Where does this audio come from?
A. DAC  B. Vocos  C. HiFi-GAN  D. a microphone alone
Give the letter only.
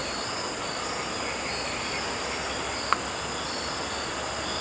D